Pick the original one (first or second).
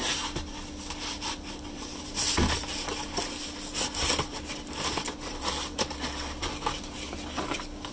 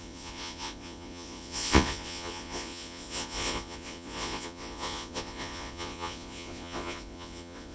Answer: first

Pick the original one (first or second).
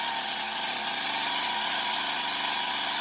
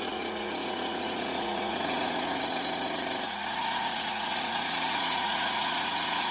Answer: first